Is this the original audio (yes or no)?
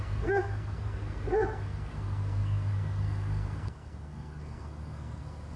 no